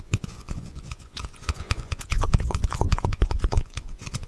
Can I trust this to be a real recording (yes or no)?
no